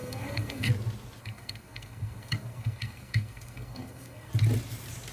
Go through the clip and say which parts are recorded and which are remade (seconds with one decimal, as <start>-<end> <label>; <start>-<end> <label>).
0.0-0.7 remade; 0.7-1.2 recorded; 1.2-4.3 remade; 4.3-5.1 recorded